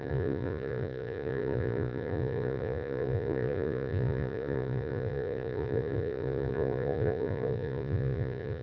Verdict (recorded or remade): remade